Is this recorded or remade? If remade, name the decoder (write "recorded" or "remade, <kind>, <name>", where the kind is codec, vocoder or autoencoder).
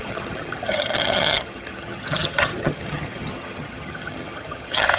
remade, vocoder, HiFi-GAN